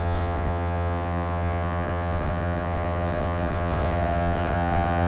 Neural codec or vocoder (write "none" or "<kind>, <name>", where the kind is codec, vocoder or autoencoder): vocoder, WaveNeXt